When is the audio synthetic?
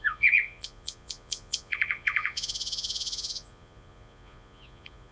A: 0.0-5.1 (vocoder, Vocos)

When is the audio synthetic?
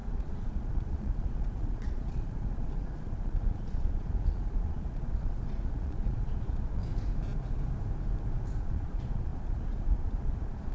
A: 0.0-6.8 (vocoder, Vocos); 8.6-10.7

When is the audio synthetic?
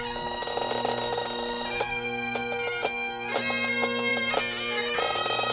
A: 4.1-5.5 (vocoder, BigVGAN v2)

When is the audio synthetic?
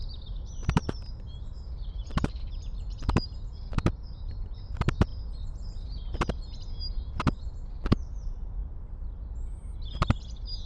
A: 0.0-5.1 (vocoder, BigVGAN v2); 7.2-8.6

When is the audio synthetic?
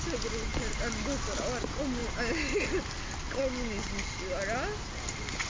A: none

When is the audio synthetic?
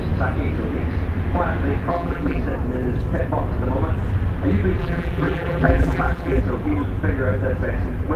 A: 1.9-2.4 (vocoder, BigVGAN v2); 4.8-6.4